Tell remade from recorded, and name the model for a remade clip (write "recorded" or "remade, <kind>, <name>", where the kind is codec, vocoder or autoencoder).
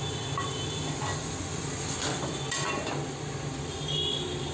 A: recorded